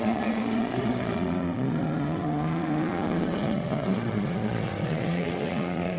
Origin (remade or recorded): remade